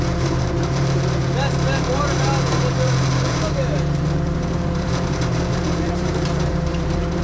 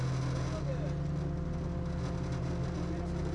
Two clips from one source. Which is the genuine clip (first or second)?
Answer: second